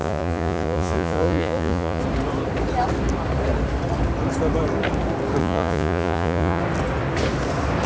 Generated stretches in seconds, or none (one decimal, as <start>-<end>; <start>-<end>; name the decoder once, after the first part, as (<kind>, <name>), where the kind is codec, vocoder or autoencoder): 0.0-2.0 (vocoder, Vocos); 5.4-6.6

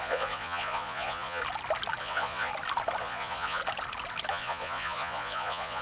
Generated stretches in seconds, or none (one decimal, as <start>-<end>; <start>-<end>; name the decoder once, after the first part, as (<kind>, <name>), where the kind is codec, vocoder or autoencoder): 0.0-1.4 (vocoder, Vocos); 2.0-2.5; 3.0-3.6; 4.3-5.8

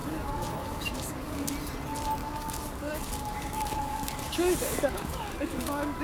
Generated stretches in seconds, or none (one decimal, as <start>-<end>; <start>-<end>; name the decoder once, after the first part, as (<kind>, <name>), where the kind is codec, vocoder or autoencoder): 0.0-1.5 (codec, DAC); 2.2-6.0